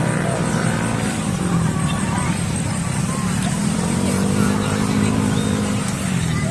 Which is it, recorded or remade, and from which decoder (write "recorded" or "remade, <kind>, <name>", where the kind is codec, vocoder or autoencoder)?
remade, vocoder, BigVGAN v2